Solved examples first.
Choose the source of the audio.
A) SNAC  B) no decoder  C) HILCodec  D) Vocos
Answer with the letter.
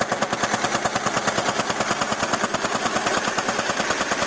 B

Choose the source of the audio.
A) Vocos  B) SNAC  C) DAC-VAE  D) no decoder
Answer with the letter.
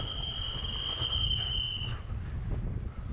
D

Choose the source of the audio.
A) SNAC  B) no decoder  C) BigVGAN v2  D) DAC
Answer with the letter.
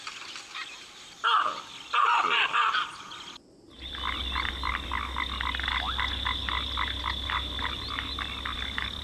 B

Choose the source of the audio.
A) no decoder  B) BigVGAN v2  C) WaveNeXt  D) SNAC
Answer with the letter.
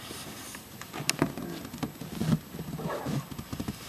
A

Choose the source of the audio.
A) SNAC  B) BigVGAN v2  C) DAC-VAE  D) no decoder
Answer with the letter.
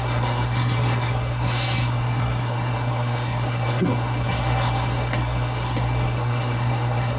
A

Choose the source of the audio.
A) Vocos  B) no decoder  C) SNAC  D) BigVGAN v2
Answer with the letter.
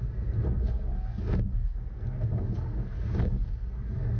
C